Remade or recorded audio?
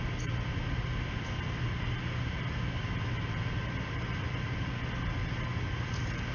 recorded